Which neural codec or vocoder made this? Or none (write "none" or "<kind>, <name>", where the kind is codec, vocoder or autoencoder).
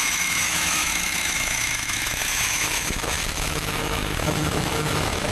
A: autoencoder, DAC-VAE